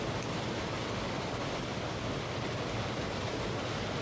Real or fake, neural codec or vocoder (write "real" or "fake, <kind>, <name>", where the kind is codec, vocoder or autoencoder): real